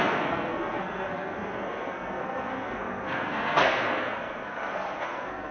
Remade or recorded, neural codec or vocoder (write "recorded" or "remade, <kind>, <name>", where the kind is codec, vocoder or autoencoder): remade, codec, SNAC